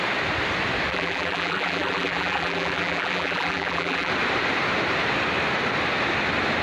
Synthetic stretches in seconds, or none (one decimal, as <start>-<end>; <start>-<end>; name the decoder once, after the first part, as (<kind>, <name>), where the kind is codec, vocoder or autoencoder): 0.9-4.1 (vocoder, BigVGAN v2)